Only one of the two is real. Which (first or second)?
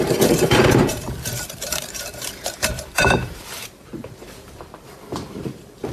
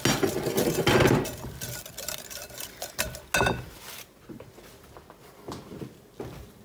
second